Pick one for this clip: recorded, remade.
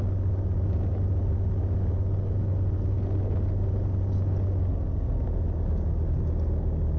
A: recorded